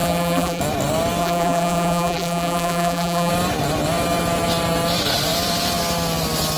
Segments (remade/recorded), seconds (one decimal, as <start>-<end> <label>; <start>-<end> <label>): 0.0-0.6 remade; 0.6-1.2 recorded; 1.2-3.3 remade; 3.3-6.6 recorded